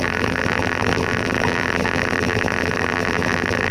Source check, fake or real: fake